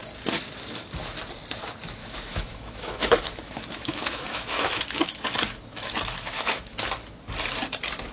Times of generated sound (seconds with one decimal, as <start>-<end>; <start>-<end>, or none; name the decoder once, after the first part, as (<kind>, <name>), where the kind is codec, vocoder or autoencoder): 2.0-6.9 (autoencoder, DAC-VAE)